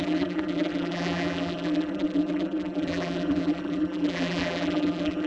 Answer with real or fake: fake